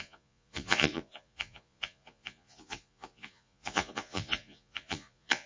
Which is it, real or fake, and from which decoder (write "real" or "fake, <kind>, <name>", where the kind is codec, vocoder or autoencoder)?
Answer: fake, vocoder, Vocos